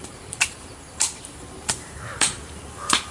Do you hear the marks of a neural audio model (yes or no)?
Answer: yes